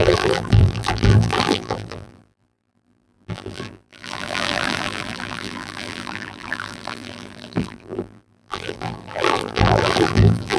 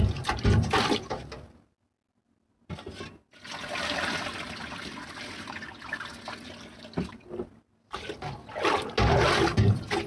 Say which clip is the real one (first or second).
second